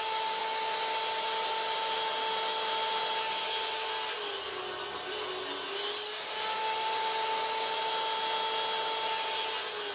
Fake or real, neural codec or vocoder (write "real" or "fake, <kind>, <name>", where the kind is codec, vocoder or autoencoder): real